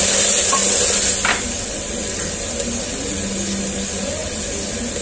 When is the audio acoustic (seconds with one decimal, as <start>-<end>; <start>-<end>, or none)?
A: 0.0-5.0